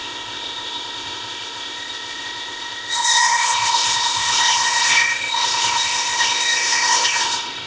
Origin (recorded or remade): remade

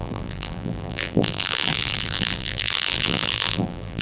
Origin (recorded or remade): remade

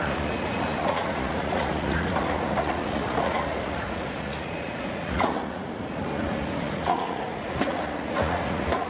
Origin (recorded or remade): remade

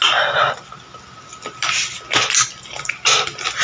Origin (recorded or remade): recorded